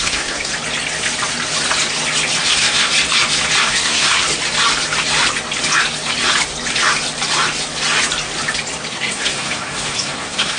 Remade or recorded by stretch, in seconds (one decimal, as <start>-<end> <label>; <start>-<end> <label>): 0.0-0.5 remade; 0.5-2.5 recorded; 2.5-2.9 remade; 2.9-3.6 recorded; 3.6-4.1 remade; 4.1-8.9 recorded; 8.9-10.6 remade